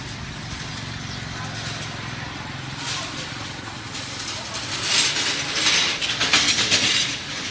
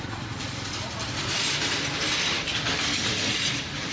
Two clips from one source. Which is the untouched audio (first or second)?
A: first